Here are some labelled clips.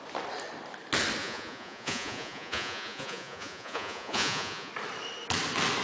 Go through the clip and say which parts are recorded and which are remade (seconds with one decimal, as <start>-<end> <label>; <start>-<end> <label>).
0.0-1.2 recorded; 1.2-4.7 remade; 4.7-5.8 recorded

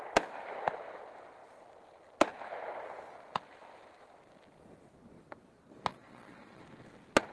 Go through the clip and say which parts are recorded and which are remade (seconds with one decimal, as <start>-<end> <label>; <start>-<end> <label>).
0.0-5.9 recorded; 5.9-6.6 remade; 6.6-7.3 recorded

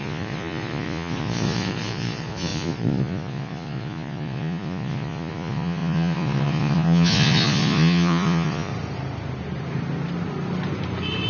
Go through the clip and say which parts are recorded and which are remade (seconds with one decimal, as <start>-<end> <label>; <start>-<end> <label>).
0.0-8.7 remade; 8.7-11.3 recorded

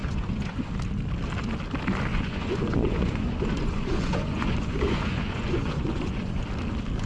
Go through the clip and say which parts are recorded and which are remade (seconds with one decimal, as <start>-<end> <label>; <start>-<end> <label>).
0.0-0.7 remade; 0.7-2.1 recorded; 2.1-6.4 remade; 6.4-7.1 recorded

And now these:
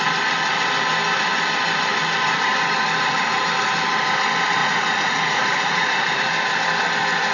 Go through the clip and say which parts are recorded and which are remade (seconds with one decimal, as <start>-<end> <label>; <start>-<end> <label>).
0.0-4.6 recorded; 4.6-6.2 remade; 6.2-7.3 recorded

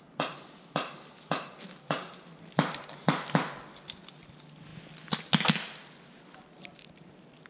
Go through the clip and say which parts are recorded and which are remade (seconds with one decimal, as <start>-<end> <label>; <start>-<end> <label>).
0.0-7.5 recorded